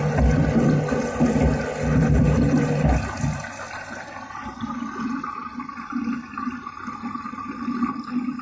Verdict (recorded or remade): recorded